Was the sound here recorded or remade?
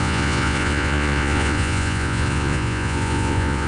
remade